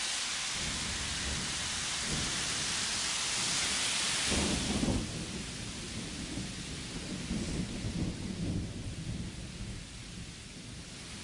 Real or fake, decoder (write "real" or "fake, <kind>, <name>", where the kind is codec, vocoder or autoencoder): real